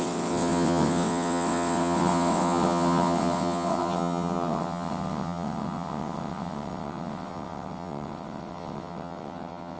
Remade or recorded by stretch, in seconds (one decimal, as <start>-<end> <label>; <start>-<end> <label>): 0.0-9.8 remade